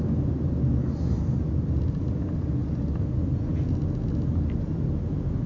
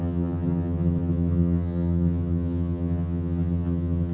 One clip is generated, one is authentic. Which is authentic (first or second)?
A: first